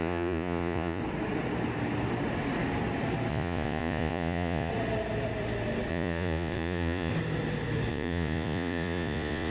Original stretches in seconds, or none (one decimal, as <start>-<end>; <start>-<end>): 1.0-3.3; 4.7-5.9; 7.1-7.9